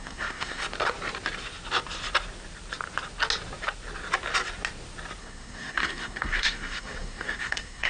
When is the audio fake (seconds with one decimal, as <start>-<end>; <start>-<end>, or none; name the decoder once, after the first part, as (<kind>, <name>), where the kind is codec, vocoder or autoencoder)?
0.0-0.6 (codec, SNAC); 5.2-7.9